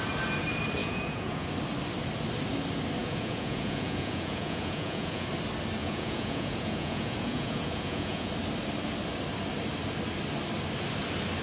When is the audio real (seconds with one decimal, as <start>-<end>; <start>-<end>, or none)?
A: 0.0-0.8; 1.5-3.0; 5.3-5.8; 8.3-11.4

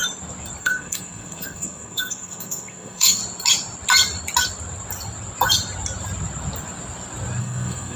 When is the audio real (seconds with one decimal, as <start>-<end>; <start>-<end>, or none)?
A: 0.0-0.6; 3.2-7.4

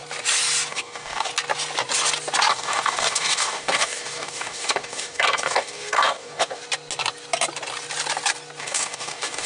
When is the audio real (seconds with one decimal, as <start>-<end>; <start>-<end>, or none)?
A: 0.0-0.7; 1.3-2.5; 6.6-8.6